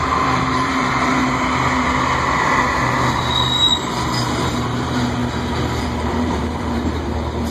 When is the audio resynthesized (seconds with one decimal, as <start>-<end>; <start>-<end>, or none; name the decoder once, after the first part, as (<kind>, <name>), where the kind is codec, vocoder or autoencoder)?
0.0-1.2 (vocoder, BigVGAN v2); 3.7-5.2; 5.8-7.5